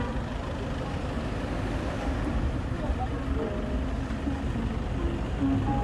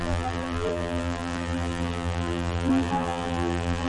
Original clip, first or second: first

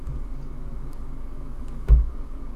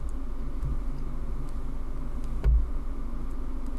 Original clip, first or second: second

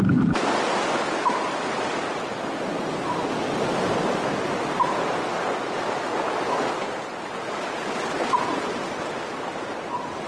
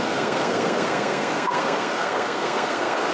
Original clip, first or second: first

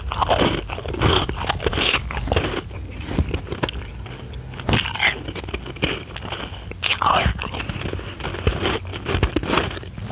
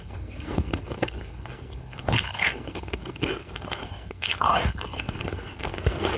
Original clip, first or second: first